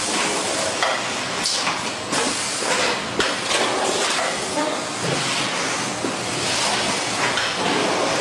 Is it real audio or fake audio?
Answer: real